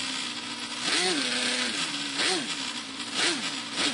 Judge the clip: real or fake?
real